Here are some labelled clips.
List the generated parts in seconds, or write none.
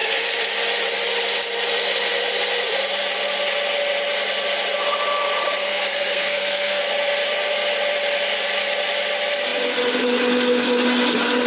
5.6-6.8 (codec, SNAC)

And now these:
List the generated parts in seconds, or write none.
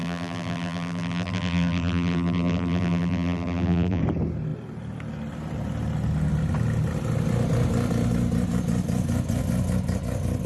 0.0-4.0 (vocoder, BigVGAN v2)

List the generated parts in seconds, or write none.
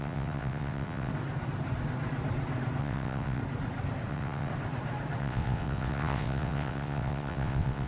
0.0-1.1 (vocoder, WaveNeXt); 2.8-3.4; 4.1-4.5; 5.2-7.9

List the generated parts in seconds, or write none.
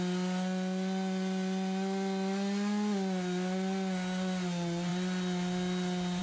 none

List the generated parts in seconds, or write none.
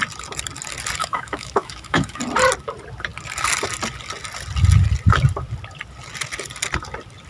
1.0-2.2 (autoencoder, DAC-VAE)